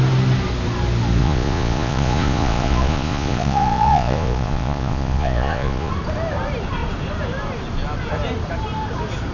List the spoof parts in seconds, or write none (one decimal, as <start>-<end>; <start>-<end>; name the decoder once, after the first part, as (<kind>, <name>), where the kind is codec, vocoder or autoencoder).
1.2-5.9 (vocoder, Vocos)